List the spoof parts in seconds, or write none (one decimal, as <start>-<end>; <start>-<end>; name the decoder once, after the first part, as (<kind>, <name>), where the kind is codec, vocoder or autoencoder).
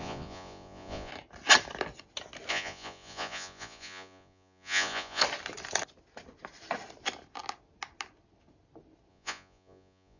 0.0-1.1 (vocoder, Vocos); 2.5-5.2; 9.1-10.2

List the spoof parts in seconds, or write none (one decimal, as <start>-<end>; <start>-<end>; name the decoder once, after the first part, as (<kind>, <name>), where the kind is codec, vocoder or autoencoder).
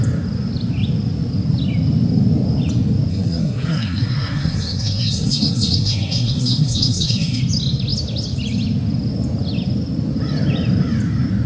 3.1-7.4 (codec, SNAC)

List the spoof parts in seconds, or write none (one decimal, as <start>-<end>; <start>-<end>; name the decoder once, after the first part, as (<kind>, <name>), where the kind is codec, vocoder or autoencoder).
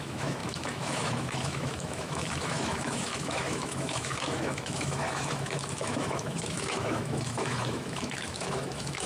0.0-9.1 (autoencoder, DAC-VAE)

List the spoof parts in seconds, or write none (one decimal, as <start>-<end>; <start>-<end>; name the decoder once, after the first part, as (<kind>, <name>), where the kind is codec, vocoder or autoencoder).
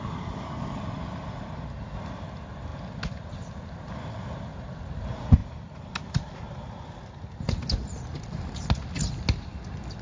none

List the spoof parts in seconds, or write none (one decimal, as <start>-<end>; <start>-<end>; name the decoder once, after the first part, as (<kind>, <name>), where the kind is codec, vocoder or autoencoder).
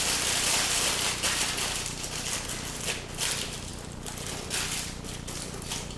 none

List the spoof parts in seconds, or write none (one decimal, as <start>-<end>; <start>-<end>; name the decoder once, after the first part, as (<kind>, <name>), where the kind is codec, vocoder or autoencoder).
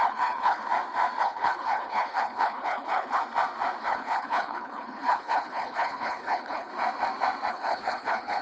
0.0-0.6 (codec, HILCodec); 1.2-3.2; 3.8-6.7; 7.5-8.4